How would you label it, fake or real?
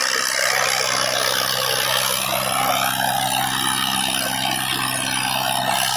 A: real